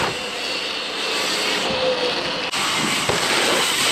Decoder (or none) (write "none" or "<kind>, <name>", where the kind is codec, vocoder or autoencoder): none